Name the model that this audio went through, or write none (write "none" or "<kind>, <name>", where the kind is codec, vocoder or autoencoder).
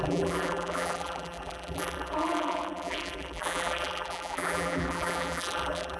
vocoder, BigVGAN v2